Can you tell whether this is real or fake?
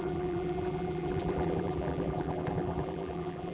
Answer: fake